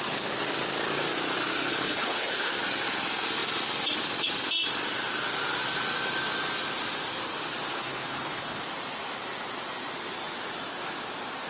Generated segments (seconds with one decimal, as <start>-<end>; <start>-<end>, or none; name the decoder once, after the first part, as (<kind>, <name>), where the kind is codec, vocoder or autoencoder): 1.7-2.5 (codec, HILCodec); 7.7-8.6